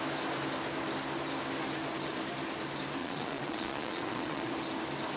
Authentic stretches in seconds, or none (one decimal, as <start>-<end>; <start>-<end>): 0.0-3.0; 4.5-5.2